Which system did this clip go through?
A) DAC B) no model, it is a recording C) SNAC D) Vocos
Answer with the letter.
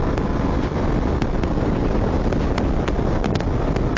B